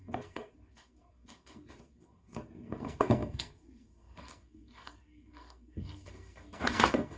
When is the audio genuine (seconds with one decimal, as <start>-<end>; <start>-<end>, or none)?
none